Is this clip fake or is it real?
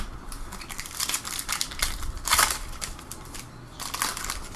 fake